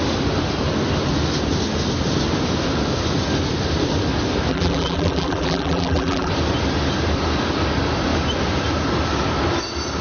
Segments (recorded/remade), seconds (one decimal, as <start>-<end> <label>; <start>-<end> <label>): 0.0-4.5 recorded; 4.5-6.3 remade; 6.3-10.0 recorded